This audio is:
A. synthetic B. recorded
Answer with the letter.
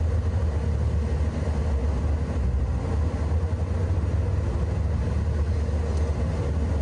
B